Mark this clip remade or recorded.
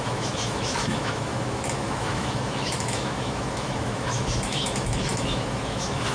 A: remade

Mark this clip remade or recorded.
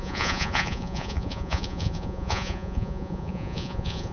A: remade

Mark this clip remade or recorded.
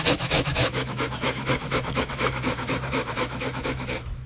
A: remade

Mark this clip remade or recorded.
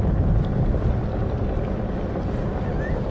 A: recorded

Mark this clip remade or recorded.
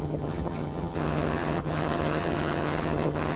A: remade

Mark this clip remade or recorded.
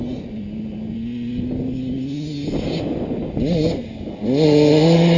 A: recorded